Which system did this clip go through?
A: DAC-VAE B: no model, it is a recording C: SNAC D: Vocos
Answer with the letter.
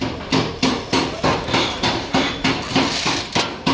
B